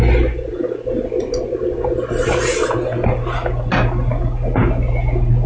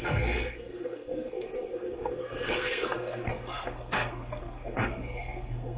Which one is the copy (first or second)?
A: second